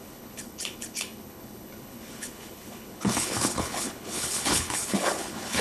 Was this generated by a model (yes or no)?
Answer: yes